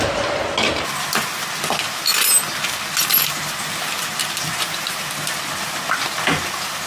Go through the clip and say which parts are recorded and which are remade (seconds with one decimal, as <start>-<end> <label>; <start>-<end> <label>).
0.0-6.9 recorded